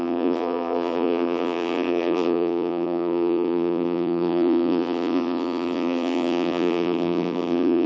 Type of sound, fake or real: fake